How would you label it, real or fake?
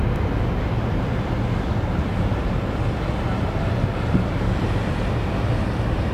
real